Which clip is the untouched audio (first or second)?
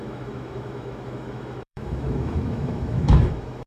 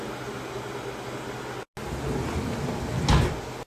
second